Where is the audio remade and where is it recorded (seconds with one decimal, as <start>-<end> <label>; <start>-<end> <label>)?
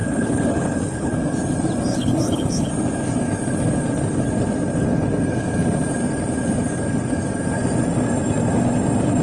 0.0-1.1 remade; 1.1-1.9 recorded; 1.9-2.7 remade; 2.7-9.2 recorded